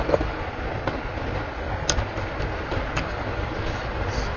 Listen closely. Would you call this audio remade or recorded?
recorded